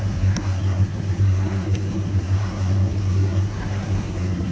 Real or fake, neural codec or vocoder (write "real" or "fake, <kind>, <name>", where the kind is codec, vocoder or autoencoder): fake, codec, SNAC